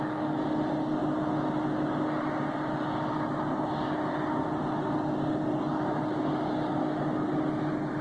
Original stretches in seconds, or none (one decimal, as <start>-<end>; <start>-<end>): 0.0-8.0